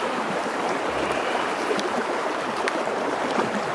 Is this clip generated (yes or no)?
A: yes